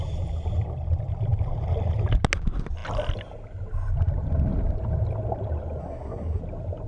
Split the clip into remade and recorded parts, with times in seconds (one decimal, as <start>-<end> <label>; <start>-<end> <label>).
0.0-5.8 recorded; 5.8-6.4 remade; 6.4-6.9 recorded